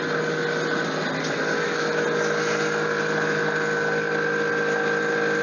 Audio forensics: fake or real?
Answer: real